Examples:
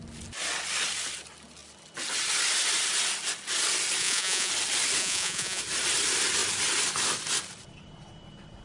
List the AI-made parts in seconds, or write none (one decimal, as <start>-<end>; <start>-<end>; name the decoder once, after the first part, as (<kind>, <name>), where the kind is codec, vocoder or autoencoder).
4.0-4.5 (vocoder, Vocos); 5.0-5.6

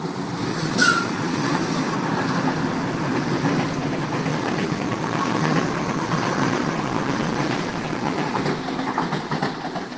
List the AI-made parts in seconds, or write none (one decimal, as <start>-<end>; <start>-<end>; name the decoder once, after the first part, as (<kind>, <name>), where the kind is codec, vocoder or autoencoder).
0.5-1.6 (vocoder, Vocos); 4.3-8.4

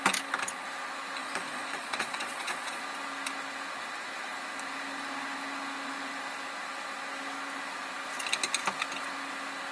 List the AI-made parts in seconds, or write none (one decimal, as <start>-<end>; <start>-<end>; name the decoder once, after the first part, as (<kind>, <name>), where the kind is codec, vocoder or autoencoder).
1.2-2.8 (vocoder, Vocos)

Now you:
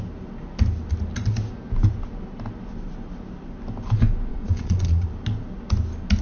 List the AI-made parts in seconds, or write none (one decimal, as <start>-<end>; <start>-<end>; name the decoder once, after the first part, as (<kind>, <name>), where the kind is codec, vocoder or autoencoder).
4.3-5.1 (vocoder, Vocos)